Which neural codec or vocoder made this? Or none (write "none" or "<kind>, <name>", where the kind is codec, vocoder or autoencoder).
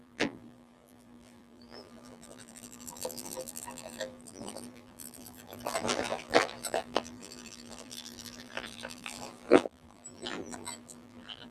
vocoder, BigVGAN v2